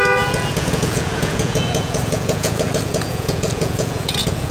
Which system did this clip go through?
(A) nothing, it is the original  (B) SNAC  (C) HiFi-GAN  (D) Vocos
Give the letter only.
D